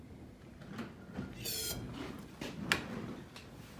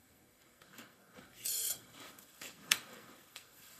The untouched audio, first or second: first